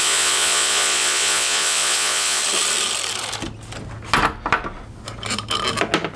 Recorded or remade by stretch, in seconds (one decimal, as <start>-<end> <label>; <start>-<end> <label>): 0.0-2.4 remade; 2.4-6.2 recorded